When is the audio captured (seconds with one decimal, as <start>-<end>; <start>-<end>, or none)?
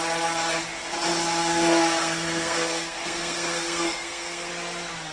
0.0-1.4; 4.5-5.1